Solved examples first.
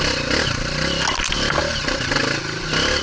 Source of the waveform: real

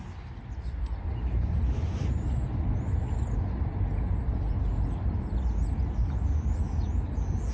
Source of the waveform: real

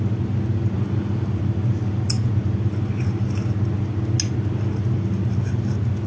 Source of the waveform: real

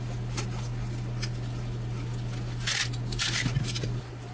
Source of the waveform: real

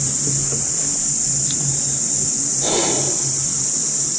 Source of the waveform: real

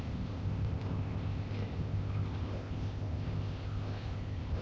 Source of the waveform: fake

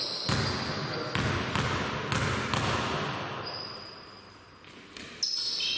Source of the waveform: real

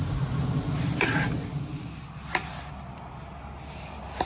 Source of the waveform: real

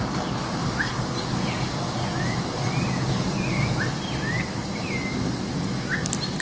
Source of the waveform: real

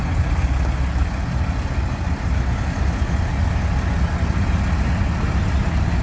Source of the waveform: real